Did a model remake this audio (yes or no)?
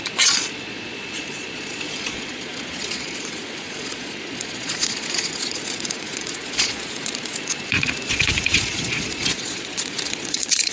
yes